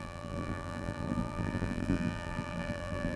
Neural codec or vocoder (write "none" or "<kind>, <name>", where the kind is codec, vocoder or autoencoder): vocoder, BigVGAN v2